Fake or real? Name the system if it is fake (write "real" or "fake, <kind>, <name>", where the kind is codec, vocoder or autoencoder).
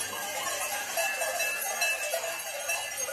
fake, vocoder, BigVGAN v2